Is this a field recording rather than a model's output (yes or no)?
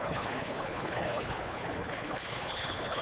no